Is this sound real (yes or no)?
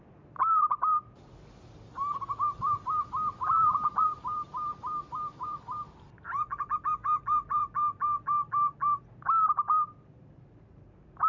no